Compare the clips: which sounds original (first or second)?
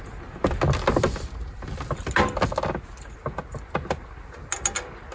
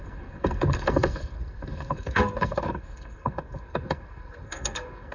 first